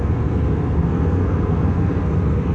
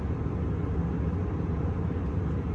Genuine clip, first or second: second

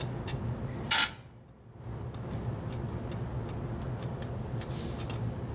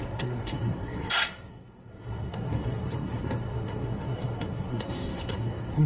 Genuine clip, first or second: first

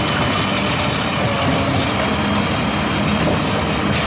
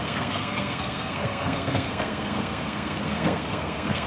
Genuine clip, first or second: first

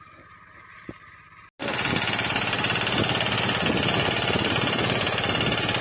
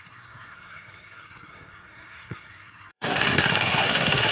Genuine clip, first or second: first